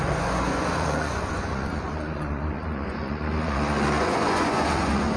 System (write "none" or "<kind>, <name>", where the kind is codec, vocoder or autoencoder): vocoder, Vocos